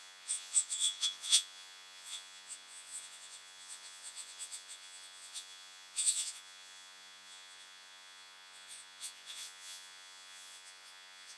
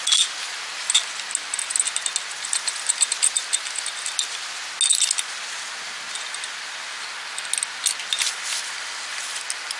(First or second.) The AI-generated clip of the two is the first